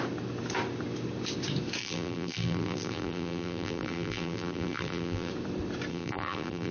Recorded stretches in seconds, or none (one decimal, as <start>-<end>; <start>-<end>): 0.0-1.8; 5.3-5.9